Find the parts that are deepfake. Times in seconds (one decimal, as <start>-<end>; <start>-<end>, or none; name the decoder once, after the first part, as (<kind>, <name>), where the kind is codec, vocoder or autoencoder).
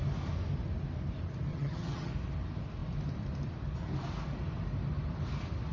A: 1.5-2.1 (vocoder, HiFi-GAN)